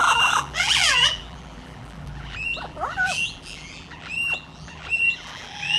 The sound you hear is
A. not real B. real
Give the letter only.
A